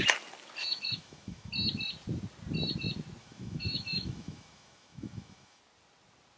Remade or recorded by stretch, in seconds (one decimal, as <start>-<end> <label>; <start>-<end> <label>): 0.0-0.6 recorded; 0.6-1.5 remade; 1.5-3.2 recorded; 3.2-5.6 remade; 5.6-6.4 recorded